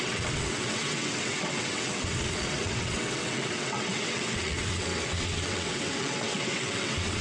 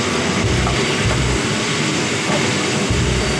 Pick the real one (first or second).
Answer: second